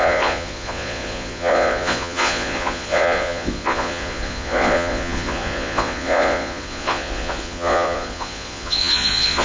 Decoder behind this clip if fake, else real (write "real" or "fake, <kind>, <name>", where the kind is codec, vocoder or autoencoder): fake, vocoder, Vocos